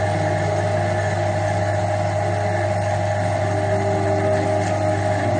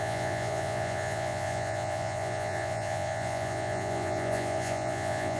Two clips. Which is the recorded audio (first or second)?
first